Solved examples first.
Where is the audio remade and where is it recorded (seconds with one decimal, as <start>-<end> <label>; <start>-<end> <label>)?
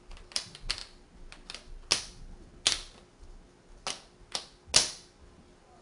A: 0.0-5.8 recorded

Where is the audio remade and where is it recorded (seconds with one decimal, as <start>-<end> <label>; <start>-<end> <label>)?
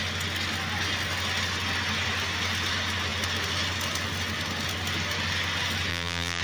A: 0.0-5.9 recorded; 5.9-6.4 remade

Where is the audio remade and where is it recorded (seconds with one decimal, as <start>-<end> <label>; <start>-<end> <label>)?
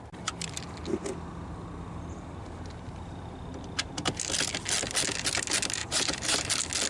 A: 0.0-2.4 recorded; 2.4-4.1 remade; 4.1-5.8 recorded; 5.8-6.5 remade; 6.5-6.9 recorded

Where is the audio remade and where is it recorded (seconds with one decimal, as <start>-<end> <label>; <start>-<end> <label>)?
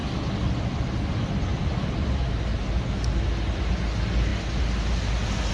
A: 0.0-5.5 recorded